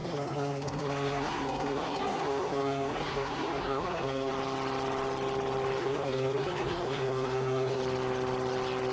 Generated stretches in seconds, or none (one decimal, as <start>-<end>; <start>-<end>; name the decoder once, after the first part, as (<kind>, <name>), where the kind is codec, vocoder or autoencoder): 0.0-4.3 (codec, SNAC); 5.8-7.8